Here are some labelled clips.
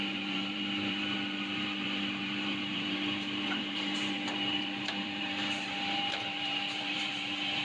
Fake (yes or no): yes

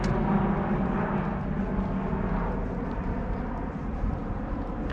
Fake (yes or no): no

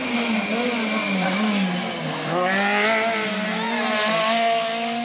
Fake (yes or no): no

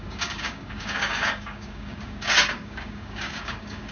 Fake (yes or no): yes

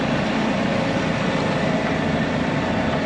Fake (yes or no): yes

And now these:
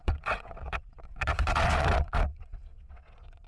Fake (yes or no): yes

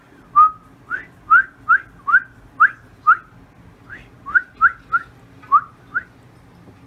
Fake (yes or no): no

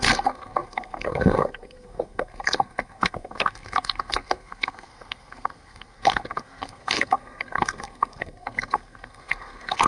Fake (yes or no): yes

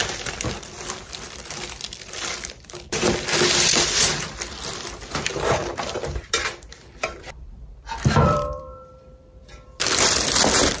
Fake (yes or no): yes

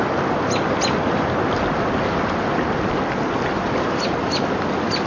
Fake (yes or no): no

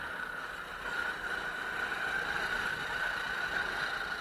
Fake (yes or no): yes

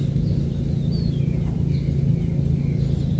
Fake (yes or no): no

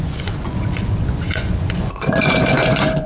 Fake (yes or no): yes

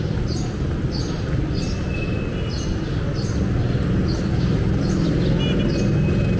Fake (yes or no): no